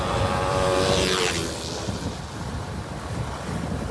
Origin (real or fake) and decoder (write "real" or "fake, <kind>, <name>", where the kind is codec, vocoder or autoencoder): real